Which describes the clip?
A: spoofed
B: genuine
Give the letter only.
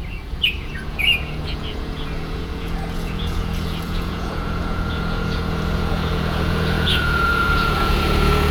A